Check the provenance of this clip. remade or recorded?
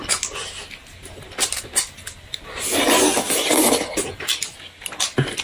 recorded